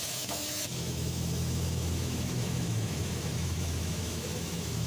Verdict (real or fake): fake